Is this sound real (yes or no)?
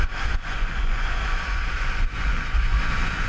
no